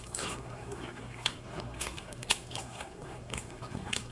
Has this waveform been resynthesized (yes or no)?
yes